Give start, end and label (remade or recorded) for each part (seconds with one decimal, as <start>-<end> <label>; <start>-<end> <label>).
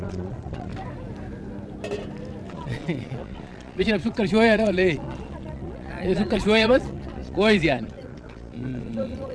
0.0-0.7 remade; 0.7-2.5 recorded; 2.5-9.3 remade